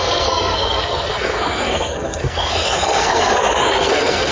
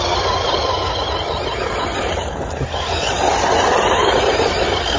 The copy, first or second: first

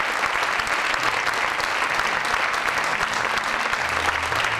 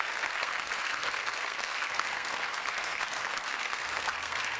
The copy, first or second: second